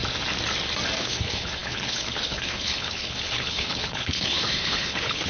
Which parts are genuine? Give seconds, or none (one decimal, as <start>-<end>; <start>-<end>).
0.0-1.0